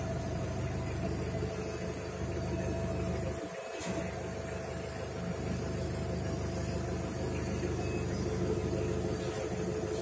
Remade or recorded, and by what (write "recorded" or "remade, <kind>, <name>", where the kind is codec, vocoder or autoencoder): recorded